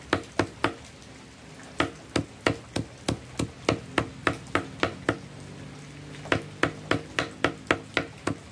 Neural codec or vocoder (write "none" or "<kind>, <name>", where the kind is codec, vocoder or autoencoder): none